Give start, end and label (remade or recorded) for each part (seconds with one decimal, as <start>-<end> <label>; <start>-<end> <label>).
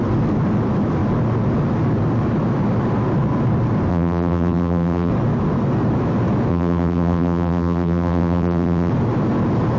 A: 0.0-3.9 recorded; 3.9-5.1 remade; 5.1-6.5 recorded; 6.5-8.9 remade; 8.9-9.8 recorded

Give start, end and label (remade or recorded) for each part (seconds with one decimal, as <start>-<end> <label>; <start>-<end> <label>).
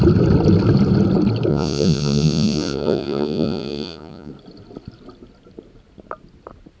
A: 0.0-1.5 recorded; 1.5-4.3 remade; 4.3-6.8 recorded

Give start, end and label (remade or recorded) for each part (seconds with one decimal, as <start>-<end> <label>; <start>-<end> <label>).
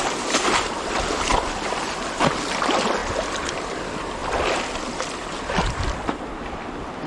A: 0.0-3.0 recorded; 3.0-3.8 remade; 3.8-7.1 recorded